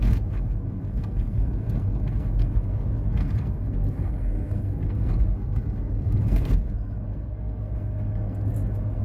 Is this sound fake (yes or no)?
yes